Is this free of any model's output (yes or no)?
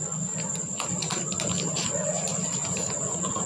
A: yes